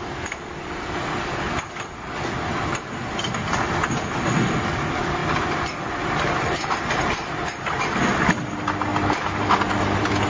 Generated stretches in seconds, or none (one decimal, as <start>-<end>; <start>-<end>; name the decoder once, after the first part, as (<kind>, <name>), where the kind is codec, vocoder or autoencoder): 5.2-6.0 (vocoder, BigVGAN v2); 8.9-9.5